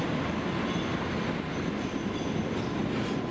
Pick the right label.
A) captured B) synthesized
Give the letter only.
A